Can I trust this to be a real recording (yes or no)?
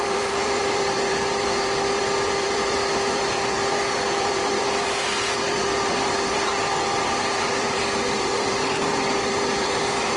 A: no